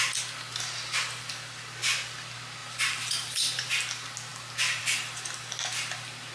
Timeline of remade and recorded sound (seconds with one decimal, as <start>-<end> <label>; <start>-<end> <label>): 0.0-2.6 recorded; 2.6-3.7 remade; 3.7-6.3 recorded